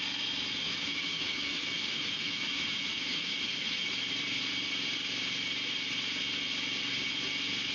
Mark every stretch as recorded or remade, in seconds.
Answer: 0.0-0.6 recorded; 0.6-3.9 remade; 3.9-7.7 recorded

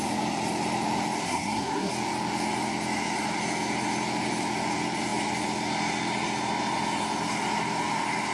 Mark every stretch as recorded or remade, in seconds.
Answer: 0.0-1.2 recorded; 1.2-1.9 remade; 1.9-8.3 recorded

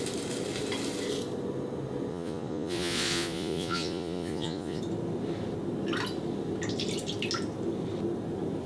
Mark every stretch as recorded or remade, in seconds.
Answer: 0.0-2.1 recorded; 2.1-4.8 remade; 4.8-8.7 recorded

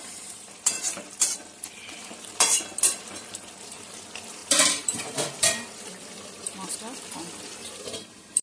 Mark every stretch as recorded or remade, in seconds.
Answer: 0.0-8.4 remade

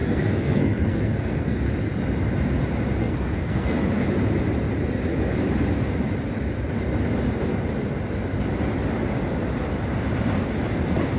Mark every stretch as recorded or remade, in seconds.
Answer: 0.0-1.7 remade; 1.7-3.0 recorded; 3.0-3.8 remade; 3.8-11.2 recorded

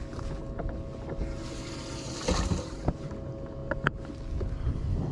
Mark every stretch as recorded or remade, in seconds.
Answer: 0.0-2.5 recorded; 2.5-3.1 remade; 3.1-5.1 recorded

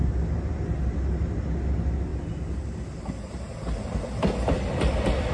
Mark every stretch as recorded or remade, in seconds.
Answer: 0.0-5.3 recorded

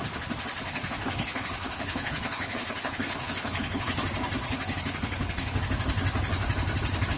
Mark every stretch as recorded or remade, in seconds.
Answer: 0.0-0.6 recorded; 0.6-4.0 remade; 4.0-4.4 recorded; 4.4-5.6 remade; 5.6-7.2 recorded